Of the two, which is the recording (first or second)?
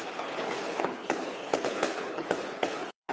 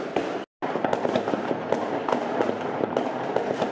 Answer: second